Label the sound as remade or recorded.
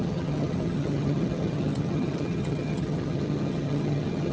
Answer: remade